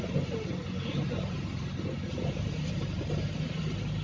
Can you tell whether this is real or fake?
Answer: real